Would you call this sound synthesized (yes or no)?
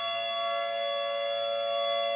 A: no